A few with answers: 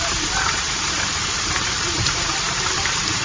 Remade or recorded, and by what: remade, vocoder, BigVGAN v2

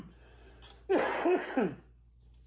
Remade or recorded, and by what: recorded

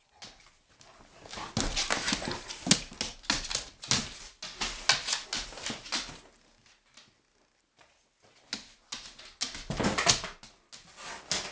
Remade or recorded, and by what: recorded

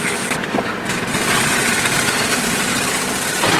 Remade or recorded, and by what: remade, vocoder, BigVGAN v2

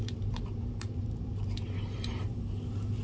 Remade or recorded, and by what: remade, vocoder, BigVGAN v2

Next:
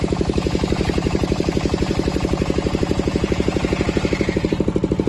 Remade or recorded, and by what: remade, vocoder, BigVGAN v2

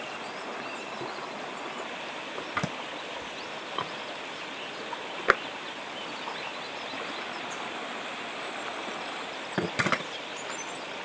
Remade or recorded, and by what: recorded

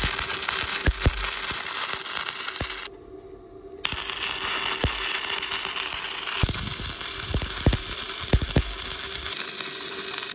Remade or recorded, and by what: recorded